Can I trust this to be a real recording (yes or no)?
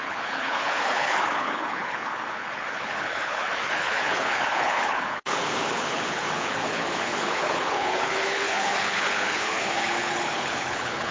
no